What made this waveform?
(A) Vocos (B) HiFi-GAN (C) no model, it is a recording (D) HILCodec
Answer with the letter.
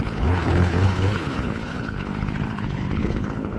D